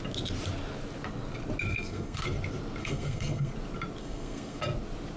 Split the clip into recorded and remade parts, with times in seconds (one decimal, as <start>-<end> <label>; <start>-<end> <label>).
0.0-1.7 recorded; 1.7-2.2 remade; 2.2-2.8 recorded; 2.8-3.5 remade; 3.5-4.0 recorded; 4.0-4.6 remade; 4.6-5.2 recorded